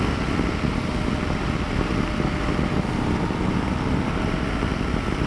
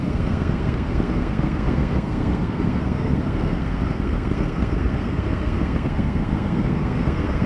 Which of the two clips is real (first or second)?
first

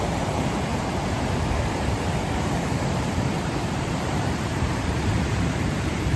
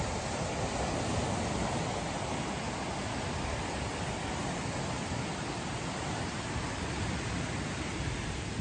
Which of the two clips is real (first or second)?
second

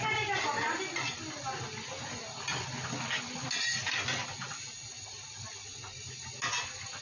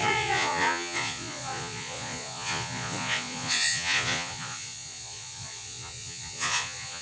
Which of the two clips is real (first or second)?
first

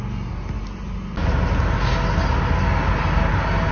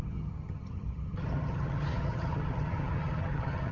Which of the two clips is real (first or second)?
first